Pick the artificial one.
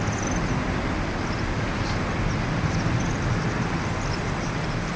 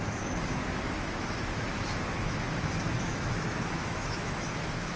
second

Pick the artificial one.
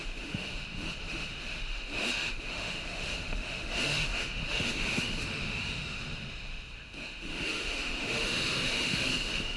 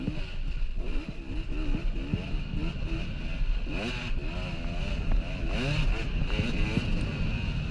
first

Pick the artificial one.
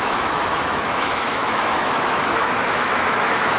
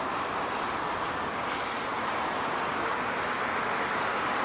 first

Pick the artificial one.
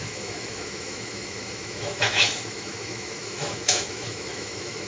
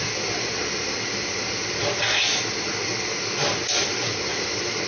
first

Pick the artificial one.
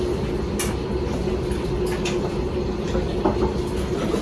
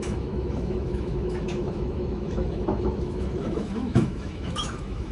second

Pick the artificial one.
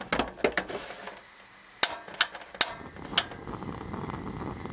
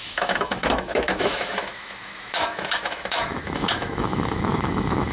second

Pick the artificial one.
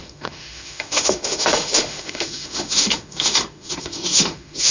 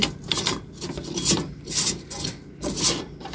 first